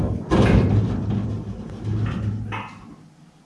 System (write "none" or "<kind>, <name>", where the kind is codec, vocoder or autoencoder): none